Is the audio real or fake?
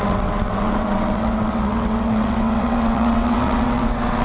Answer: fake